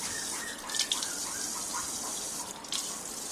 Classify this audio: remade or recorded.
recorded